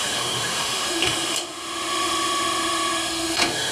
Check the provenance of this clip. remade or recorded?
remade